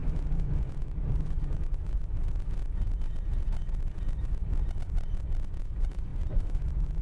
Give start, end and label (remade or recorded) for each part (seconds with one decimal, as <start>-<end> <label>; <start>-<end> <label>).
0.0-2.0 remade; 2.0-5.6 recorded; 5.6-7.0 remade